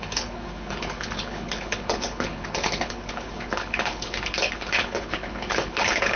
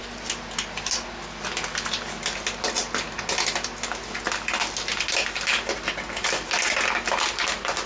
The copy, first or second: first